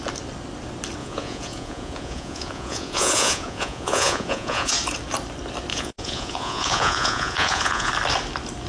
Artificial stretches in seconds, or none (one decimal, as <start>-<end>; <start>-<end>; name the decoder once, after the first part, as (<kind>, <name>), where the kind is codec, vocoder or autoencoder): 1.0-4.7 (vocoder, Vocos); 5.7-7.9